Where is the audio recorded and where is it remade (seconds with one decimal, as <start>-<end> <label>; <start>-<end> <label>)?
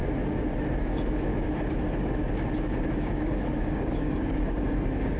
0.0-0.8 recorded; 0.8-1.3 remade; 1.3-2.9 recorded; 2.9-5.2 remade